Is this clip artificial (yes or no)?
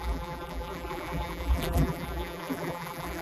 yes